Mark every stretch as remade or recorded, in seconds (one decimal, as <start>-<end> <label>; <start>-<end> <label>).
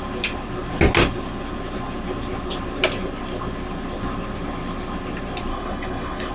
0.0-5.5 recorded; 5.5-6.3 remade